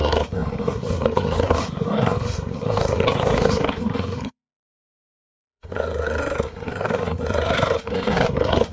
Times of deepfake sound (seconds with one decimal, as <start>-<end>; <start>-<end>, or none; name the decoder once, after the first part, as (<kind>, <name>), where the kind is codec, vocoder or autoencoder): 0.0-8.7 (codec, SNAC)